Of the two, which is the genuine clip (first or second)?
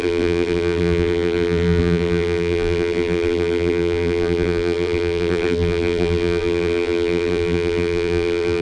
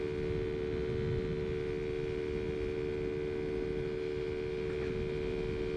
second